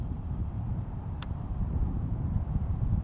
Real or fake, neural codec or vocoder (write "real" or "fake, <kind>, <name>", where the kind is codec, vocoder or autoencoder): fake, vocoder, BigVGAN v2